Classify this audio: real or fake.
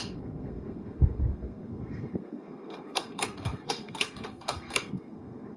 fake